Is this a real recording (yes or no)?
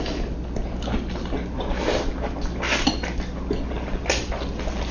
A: yes